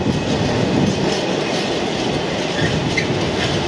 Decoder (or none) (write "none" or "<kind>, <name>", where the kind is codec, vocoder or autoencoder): none